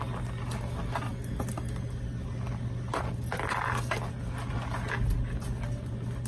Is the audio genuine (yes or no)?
yes